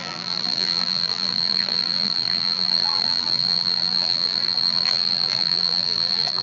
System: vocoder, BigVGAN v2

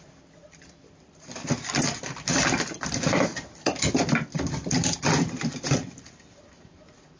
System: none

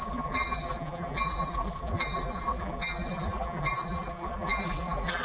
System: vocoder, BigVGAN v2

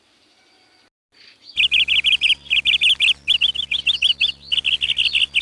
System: none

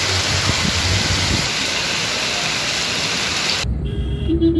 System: vocoder, BigVGAN v2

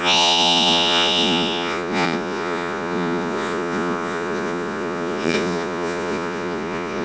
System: vocoder, Vocos